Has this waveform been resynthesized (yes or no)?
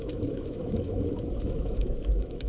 yes